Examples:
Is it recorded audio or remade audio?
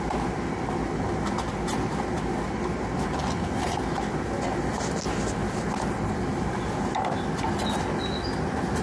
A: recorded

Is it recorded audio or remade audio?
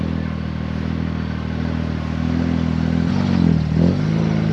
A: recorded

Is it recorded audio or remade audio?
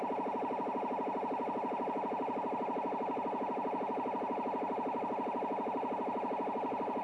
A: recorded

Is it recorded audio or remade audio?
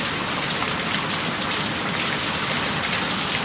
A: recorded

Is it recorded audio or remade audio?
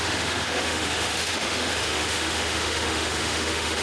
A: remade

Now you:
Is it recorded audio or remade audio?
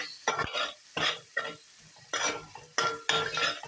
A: recorded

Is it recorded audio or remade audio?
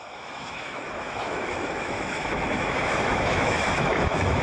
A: remade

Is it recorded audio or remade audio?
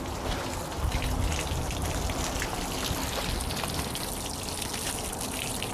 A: recorded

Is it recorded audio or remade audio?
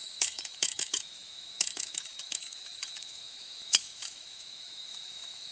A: remade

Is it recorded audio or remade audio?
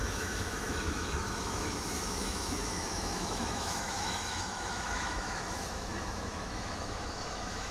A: remade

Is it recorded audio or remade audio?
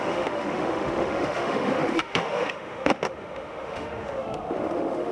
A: remade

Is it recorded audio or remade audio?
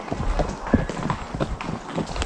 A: recorded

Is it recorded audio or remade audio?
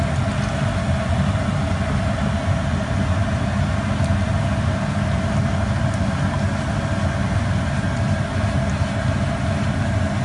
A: recorded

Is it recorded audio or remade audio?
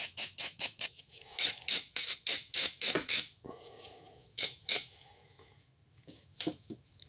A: remade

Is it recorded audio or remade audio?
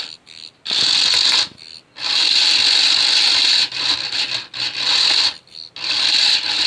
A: recorded